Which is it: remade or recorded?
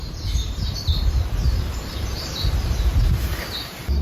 remade